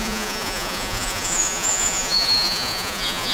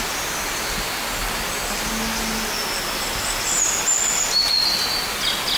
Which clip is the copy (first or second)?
first